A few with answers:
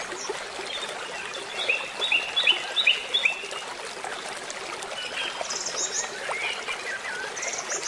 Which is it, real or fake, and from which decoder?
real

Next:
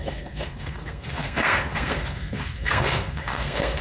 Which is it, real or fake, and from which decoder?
fake, codec, SNAC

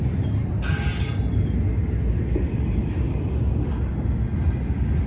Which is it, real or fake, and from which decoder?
real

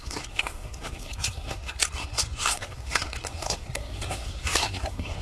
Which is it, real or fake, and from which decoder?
fake, codec, SNAC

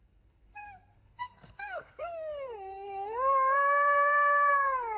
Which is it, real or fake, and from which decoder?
fake, codec, SNAC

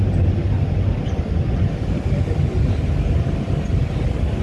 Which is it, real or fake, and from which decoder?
real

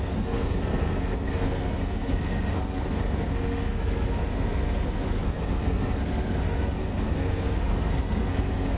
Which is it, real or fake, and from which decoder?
fake, codec, SNAC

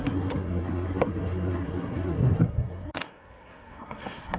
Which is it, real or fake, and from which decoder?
fake, codec, SNAC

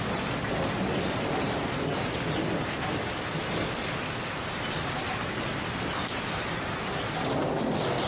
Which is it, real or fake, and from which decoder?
real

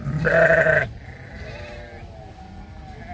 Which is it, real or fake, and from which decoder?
real